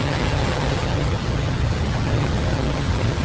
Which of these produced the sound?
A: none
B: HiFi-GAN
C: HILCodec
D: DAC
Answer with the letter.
B